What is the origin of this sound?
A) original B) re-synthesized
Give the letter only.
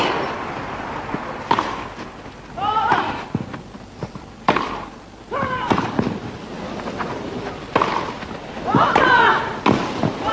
A